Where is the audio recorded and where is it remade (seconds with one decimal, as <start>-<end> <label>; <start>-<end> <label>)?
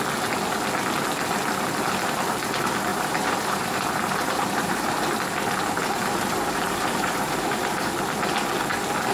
0.0-2.9 recorded; 2.9-5.0 remade; 5.0-5.8 recorded; 5.8-7.9 remade; 7.9-9.1 recorded